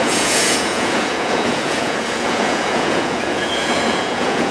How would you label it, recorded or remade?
remade